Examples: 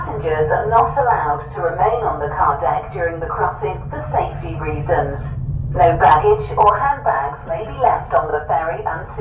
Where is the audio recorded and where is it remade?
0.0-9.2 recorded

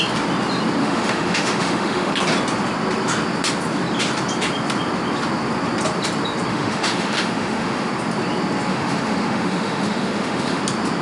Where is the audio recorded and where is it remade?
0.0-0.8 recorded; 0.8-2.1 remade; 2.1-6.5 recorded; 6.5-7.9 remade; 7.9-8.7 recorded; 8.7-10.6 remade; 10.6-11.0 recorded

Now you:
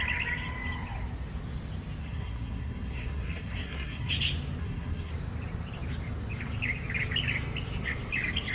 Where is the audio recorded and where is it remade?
0.0-2.0 recorded; 2.0-4.1 remade; 4.1-4.6 recorded; 4.6-5.1 remade; 5.1-8.5 recorded

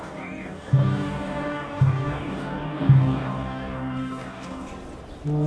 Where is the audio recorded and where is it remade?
0.0-4.7 remade; 4.7-5.5 recorded

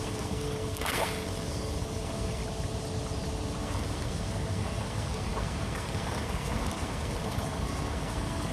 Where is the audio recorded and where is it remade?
0.0-2.4 remade; 2.4-3.6 recorded; 3.6-8.5 remade

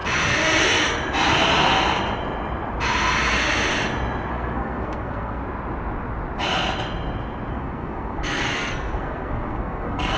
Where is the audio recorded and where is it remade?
0.0-4.3 recorded; 4.3-5.4 remade; 5.4-7.5 recorded; 7.5-10.2 remade

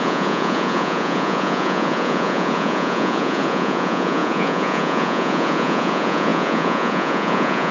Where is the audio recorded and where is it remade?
0.0-7.7 remade